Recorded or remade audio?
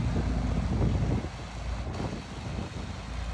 recorded